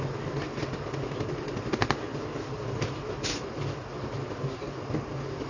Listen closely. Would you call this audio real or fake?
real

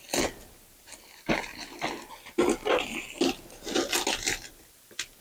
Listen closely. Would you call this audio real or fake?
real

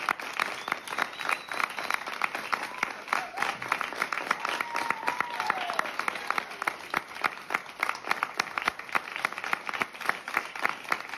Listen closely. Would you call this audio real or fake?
real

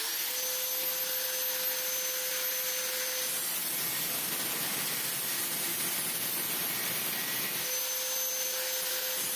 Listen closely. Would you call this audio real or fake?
real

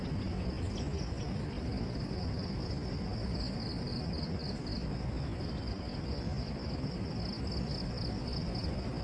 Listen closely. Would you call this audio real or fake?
real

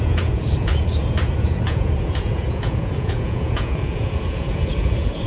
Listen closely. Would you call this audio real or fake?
fake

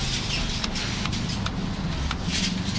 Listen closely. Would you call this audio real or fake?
real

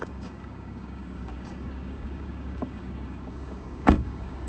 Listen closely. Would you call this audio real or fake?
fake